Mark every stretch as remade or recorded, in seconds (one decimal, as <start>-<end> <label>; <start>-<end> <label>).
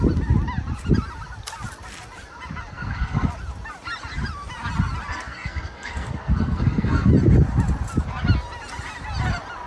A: 0.0-2.7 recorded; 2.7-3.3 remade; 3.3-5.1 recorded; 5.1-7.1 remade; 7.1-9.7 recorded